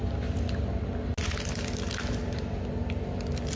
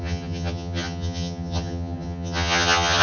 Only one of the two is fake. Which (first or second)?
second